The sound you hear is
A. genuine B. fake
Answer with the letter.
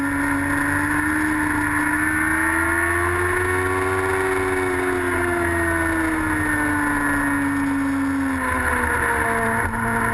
A